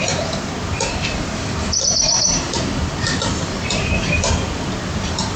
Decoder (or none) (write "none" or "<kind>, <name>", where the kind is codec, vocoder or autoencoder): vocoder, BigVGAN v2